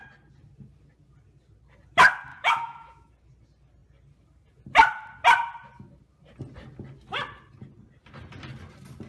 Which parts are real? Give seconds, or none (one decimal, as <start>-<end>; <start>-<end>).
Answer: 0.0-2.3; 3.1-9.1